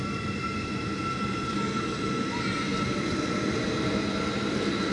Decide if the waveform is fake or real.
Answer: real